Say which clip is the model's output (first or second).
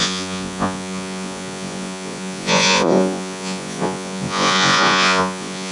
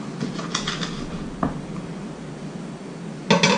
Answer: first